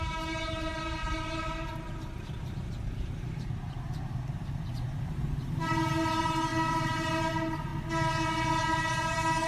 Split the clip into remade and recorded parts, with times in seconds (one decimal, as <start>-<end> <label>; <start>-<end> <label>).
0.0-7.7 remade; 7.7-8.5 recorded; 8.5-9.5 remade